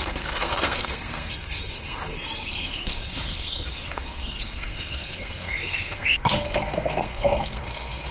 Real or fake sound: fake